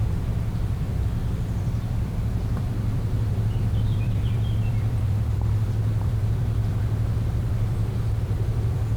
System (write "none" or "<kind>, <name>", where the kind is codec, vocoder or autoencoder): vocoder, BigVGAN v2